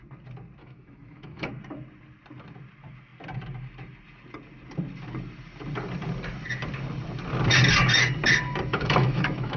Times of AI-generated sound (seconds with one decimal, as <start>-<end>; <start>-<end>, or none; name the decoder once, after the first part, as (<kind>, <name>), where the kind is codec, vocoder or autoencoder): 0.6-1.5 (autoencoder, DAC-VAE); 8.7-9.6